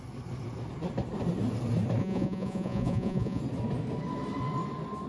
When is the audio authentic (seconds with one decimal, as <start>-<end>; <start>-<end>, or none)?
0.0-2.0; 3.4-5.1